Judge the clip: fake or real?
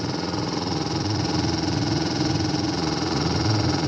fake